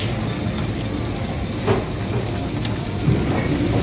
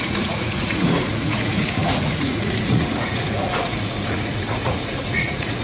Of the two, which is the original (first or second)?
first